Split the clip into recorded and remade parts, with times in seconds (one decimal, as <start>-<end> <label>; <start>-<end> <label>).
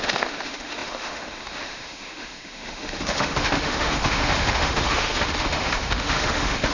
0.0-6.7 remade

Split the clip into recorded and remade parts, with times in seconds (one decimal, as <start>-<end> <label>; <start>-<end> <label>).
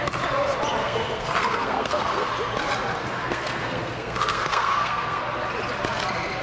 0.0-0.8 recorded; 0.8-2.3 remade; 2.3-3.0 recorded; 3.0-5.2 remade; 5.2-6.4 recorded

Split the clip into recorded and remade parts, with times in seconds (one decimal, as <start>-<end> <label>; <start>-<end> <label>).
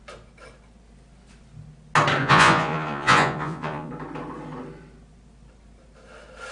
0.0-2.2 recorded; 2.2-3.9 remade; 3.9-6.5 recorded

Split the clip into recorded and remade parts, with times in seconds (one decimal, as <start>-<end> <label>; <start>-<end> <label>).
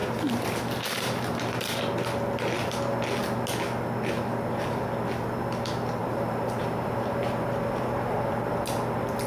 0.0-1.8 remade; 1.8-6.0 recorded; 6.0-8.5 remade; 8.5-9.3 recorded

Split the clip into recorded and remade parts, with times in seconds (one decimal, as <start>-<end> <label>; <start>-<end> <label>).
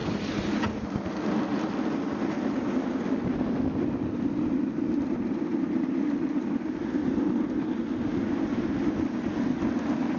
0.0-0.6 remade; 0.6-10.2 recorded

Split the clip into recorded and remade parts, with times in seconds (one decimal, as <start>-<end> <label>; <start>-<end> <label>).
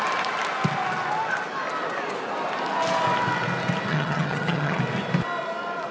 0.0-3.9 recorded; 3.9-4.8 remade; 4.8-5.9 recorded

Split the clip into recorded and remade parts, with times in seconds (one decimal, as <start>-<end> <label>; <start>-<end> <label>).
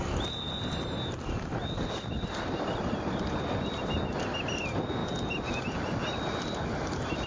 0.0-7.3 recorded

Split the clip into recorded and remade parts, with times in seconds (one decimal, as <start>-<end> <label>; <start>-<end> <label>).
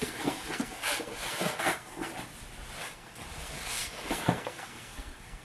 0.0-2.1 remade; 2.1-2.8 recorded; 2.8-5.4 remade